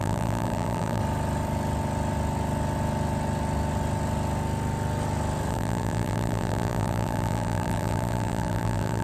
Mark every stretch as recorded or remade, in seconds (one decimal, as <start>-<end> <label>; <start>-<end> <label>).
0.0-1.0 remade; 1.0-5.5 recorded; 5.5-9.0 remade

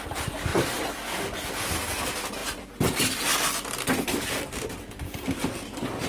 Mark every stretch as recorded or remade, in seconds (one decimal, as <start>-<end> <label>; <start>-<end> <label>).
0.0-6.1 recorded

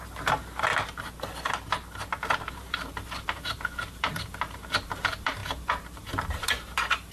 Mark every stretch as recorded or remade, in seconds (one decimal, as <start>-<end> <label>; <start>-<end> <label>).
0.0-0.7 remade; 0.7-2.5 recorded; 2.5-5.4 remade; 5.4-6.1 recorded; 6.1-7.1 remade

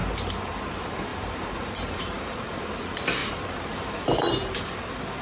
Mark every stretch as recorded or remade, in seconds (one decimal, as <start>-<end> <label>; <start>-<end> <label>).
0.0-1.1 recorded; 1.1-2.6 remade; 2.6-3.2 recorded; 3.2-5.2 remade

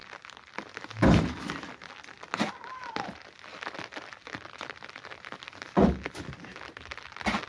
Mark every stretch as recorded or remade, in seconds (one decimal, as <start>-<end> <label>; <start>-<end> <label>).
0.0-7.5 recorded